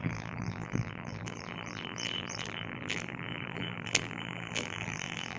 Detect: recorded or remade remade